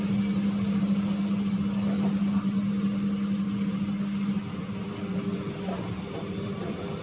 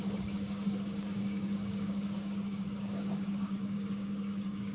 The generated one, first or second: second